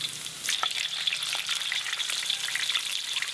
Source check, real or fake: fake